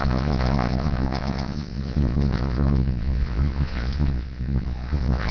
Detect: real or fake fake